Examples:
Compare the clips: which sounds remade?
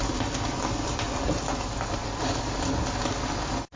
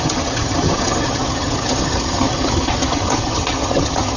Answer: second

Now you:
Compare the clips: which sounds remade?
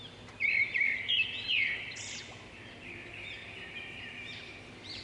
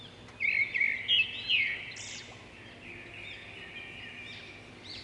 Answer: first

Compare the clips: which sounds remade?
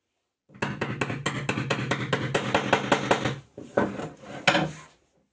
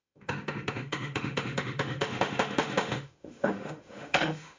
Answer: second